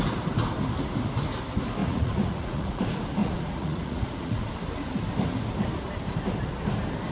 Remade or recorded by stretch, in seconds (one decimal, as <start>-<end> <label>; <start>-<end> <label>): 0.0-1.8 recorded; 1.8-2.8 remade; 2.8-3.2 recorded; 3.2-4.5 remade; 4.5-7.1 recorded

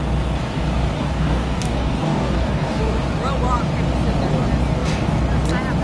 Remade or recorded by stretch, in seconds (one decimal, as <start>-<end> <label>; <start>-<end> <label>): 0.0-1.0 recorded; 1.0-2.8 remade; 2.8-5.8 recorded